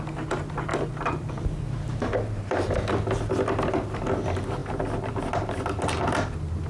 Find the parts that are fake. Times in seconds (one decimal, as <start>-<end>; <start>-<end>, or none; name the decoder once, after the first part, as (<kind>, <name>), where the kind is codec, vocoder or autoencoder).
0.7-3.3 (vocoder, BigVGAN v2); 4.6-5.1